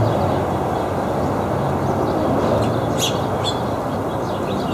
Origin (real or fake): real